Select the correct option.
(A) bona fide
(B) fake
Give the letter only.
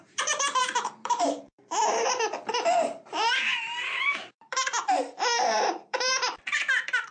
B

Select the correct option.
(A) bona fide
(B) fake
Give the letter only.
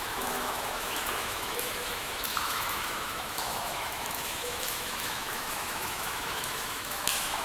B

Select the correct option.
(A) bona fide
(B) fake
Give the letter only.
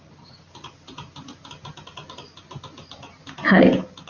A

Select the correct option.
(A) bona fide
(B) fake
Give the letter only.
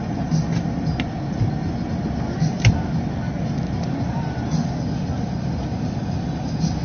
A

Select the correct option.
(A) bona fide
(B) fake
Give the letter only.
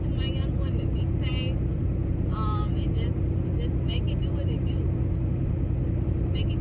A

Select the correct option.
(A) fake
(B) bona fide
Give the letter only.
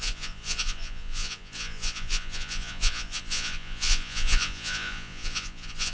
A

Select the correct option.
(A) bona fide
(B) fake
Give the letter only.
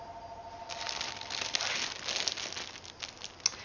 A